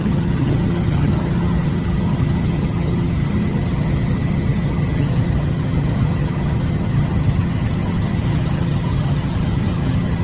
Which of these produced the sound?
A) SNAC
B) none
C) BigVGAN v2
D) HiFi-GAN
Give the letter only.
D